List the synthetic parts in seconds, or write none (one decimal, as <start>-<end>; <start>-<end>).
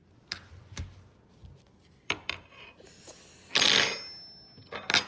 1.8-3.5